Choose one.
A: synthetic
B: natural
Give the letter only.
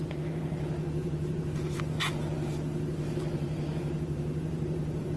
A